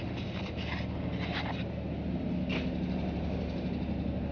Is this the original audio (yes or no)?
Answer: yes